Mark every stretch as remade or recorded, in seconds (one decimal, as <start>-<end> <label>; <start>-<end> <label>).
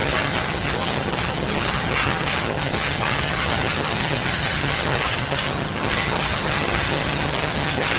0.0-8.0 remade